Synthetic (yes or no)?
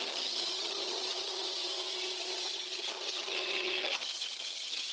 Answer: yes